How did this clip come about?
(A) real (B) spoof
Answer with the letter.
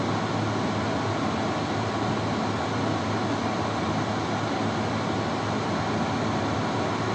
A